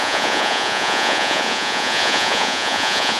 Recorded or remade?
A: remade